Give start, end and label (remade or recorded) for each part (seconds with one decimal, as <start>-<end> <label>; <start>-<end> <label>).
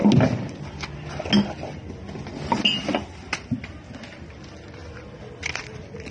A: 0.0-6.1 recorded